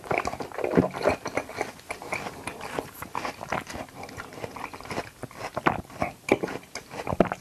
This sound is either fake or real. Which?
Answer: real